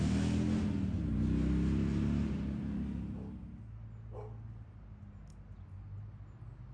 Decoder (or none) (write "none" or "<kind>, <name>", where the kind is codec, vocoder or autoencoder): none